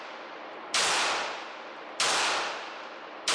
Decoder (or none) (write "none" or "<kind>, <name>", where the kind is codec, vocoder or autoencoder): none